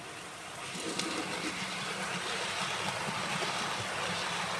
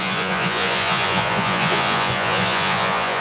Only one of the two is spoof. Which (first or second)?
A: second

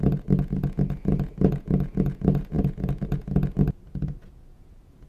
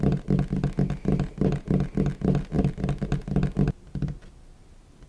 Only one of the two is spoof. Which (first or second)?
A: first